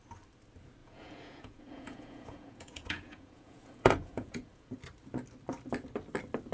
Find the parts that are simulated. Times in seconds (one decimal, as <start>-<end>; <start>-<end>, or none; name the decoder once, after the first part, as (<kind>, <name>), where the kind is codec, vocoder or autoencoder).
0.8-4.7 (vocoder, Vocos)